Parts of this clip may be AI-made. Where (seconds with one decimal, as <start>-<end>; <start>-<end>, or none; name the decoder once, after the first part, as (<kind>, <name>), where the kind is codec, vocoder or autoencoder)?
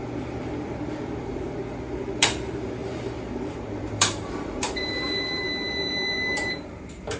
0.0-7.2 (vocoder, BigVGAN v2)